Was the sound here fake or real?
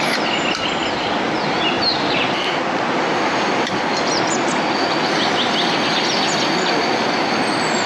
real